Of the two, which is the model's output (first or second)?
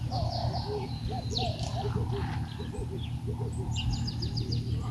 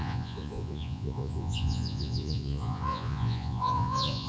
second